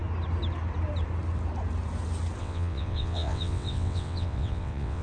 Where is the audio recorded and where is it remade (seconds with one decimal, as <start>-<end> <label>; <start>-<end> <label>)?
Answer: 0.0-2.4 recorded; 2.4-5.0 remade